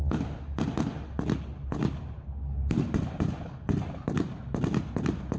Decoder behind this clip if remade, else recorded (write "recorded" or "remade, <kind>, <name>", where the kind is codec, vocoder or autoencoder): recorded